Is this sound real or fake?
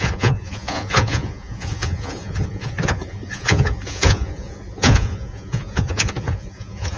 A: fake